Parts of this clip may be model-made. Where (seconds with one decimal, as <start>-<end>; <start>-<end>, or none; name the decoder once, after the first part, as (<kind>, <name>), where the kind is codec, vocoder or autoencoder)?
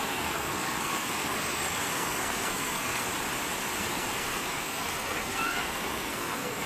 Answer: 0.0-3.1 (codec, SNAC); 3.8-6.7